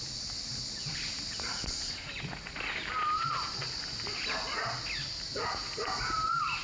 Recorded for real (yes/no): yes